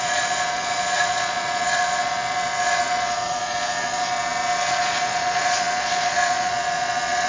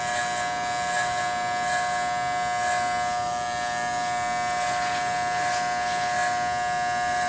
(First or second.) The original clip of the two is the second